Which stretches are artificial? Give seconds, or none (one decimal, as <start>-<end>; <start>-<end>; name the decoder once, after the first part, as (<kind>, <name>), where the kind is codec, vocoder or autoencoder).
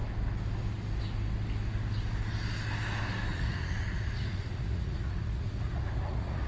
3.3-6.5 (vocoder, Vocos)